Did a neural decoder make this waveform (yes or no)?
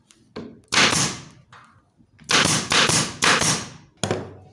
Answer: no